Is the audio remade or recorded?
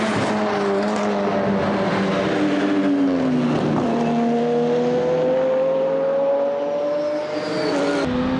recorded